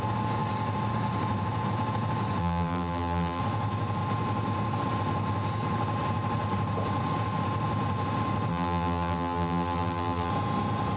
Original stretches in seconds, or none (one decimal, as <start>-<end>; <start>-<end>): 0.0-2.4; 3.4-8.5; 10.3-11.0